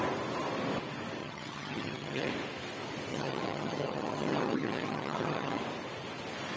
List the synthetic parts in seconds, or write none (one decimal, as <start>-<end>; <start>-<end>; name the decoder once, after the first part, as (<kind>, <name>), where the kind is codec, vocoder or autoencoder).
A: 1.2-2.3 (vocoder, HiFi-GAN); 3.1-5.6